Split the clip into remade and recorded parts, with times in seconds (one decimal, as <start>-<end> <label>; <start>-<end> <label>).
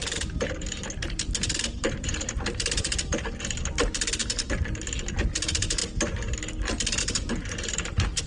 0.0-4.2 remade; 4.2-5.3 recorded; 5.3-5.8 remade; 5.8-7.0 recorded; 7.0-8.3 remade